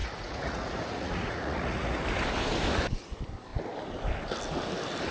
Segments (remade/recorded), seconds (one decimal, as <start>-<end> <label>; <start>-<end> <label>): 0.0-2.0 remade; 2.0-5.1 recorded